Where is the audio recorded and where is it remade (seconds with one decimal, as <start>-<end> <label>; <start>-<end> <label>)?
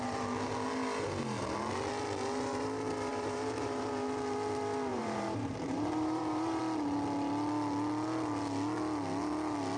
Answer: 0.0-3.1 recorded; 3.1-3.9 remade; 3.9-4.9 recorded; 4.9-6.6 remade; 6.6-9.8 recorded